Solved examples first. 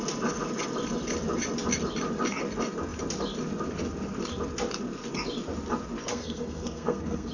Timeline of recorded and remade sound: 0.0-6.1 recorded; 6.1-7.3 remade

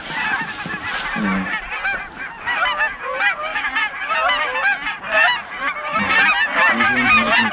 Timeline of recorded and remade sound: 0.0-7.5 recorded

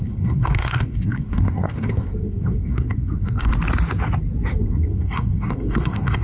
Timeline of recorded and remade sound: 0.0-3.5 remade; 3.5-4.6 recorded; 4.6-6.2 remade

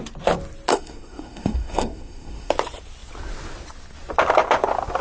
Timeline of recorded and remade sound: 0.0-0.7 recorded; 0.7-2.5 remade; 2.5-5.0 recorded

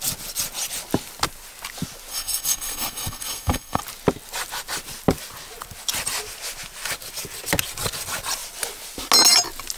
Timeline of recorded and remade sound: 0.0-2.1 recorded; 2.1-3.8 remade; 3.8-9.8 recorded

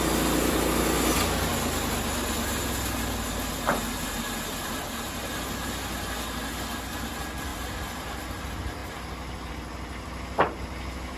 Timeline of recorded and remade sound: 0.0-11.2 recorded